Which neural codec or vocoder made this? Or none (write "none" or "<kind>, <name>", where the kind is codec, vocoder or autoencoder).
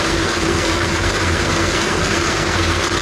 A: codec, SNAC